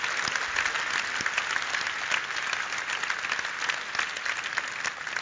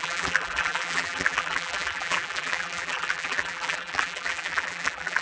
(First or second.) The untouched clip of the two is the first